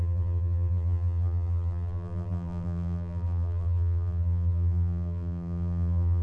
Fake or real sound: fake